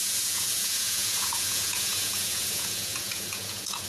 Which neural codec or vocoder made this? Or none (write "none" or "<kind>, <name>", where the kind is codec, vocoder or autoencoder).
vocoder, Vocos